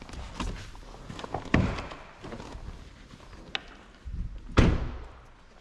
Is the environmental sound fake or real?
real